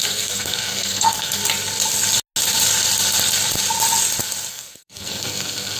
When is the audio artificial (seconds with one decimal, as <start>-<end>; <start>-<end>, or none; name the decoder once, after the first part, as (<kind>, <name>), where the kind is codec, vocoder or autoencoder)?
0.0-1.4 (codec, SNAC); 4.5-5.8